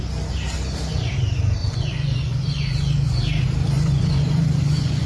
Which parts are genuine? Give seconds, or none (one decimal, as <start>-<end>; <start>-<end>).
0.0-1.6; 3.2-3.6